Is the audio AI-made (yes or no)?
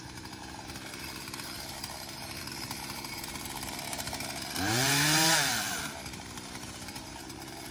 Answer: yes